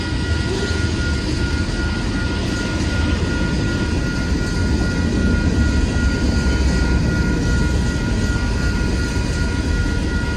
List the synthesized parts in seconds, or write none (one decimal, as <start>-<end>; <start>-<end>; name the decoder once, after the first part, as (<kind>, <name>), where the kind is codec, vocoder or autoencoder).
none